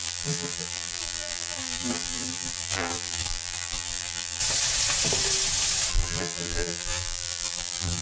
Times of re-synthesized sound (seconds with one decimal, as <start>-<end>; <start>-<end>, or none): 0.0-4.4; 5.9-8.0